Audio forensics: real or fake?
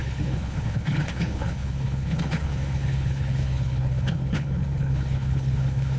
fake